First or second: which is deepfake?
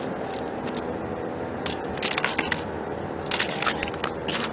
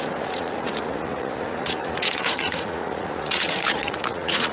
second